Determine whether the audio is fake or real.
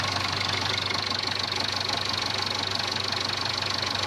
real